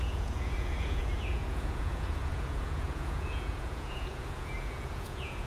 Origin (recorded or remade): remade